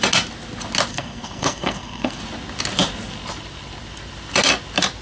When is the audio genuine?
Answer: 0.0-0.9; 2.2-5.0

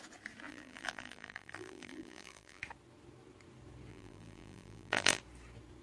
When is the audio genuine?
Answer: 0.0-0.5; 2.6-3.9; 5.2-5.8

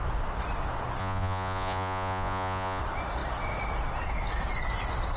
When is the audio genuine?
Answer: 0.0-1.0; 2.8-5.2

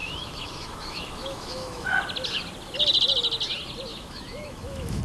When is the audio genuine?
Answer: 2.0-3.9

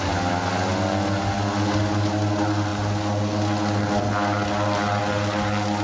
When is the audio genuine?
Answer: 0.0-5.8

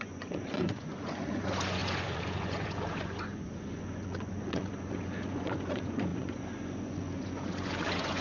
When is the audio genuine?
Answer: none